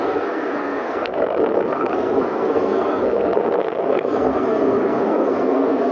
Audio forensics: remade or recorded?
remade